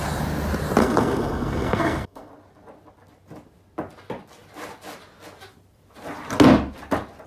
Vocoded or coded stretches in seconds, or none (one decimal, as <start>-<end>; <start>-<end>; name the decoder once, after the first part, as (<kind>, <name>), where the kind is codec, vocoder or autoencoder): 0.8-2.3 (codec, SNAC)